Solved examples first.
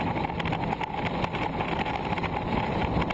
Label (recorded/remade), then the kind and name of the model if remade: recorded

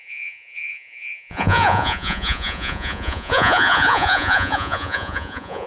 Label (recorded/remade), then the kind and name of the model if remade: remade, vocoder, Vocos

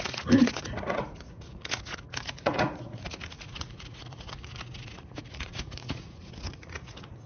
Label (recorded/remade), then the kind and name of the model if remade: remade, vocoder, Vocos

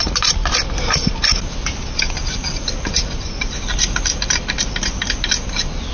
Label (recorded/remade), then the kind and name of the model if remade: recorded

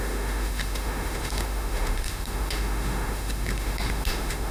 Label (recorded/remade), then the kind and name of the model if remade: remade, autoencoder, DAC-VAE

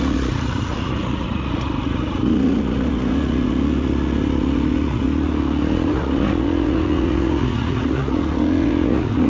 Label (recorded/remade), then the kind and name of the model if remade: remade, vocoder, Vocos